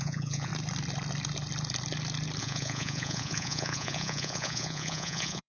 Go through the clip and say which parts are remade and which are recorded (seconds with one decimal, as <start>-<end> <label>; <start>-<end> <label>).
0.0-0.5 remade; 0.5-2.4 recorded; 2.4-5.5 remade